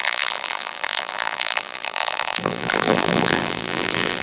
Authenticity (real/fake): fake